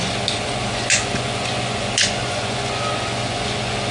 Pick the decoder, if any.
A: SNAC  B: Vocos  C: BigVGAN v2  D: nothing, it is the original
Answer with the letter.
B